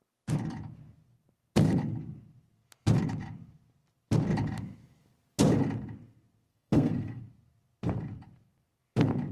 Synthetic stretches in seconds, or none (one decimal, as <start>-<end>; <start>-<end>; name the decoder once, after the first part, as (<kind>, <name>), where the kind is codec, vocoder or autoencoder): 6.5-7.2 (codec, SNAC)